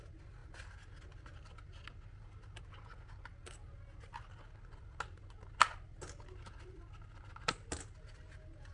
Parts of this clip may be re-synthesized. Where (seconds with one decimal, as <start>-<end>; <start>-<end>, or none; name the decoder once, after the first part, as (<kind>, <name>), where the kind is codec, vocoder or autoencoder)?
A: none